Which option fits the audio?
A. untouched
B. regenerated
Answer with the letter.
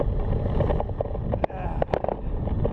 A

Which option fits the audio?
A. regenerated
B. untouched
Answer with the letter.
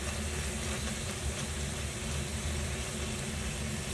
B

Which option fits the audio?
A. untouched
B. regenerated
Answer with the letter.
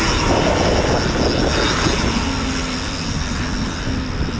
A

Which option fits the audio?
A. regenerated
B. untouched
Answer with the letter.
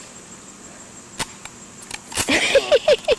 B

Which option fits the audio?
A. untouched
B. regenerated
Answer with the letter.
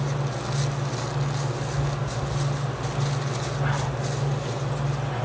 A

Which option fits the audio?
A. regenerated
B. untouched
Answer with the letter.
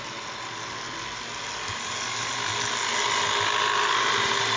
B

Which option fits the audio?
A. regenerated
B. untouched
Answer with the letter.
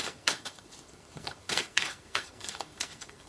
A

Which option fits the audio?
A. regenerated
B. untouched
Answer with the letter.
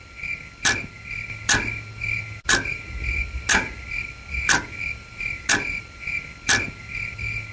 B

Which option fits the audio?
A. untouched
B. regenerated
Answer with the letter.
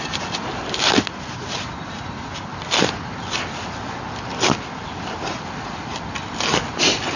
A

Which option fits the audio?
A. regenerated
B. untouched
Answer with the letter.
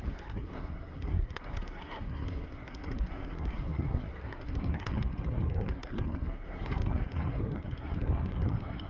A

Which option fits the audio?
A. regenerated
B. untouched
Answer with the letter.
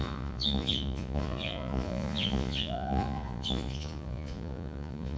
A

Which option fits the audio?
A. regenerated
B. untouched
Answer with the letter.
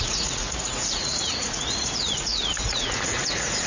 A